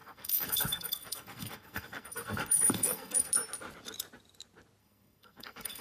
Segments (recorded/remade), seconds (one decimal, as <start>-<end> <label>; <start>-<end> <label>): 0.0-3.3 remade; 3.3-4.8 recorded; 4.8-5.8 remade

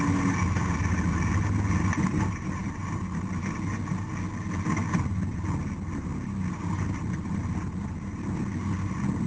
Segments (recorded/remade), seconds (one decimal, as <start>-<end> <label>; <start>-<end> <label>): 0.0-9.3 recorded

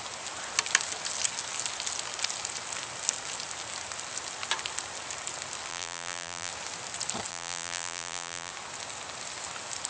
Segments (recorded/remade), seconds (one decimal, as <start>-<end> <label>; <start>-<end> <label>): 0.0-5.7 recorded; 5.7-6.5 remade; 6.5-7.3 recorded; 7.3-8.5 remade; 8.5-9.9 recorded

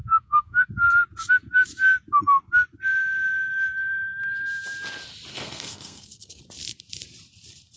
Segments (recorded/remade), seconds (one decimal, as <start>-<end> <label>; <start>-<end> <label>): 0.0-0.7 remade; 0.7-5.3 recorded; 5.3-6.4 remade; 6.4-7.8 recorded

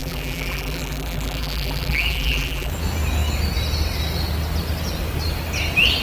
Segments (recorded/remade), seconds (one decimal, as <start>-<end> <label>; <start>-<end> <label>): 0.0-2.7 remade; 2.7-6.0 recorded